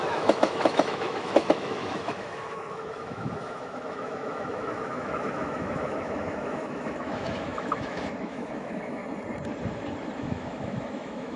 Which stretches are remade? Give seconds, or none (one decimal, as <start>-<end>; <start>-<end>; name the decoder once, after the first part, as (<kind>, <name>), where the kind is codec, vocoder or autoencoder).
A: 0.0-9.0 (autoencoder, DAC-VAE); 10.2-11.4